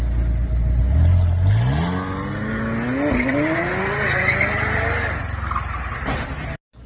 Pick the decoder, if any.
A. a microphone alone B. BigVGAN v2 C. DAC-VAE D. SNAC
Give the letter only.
A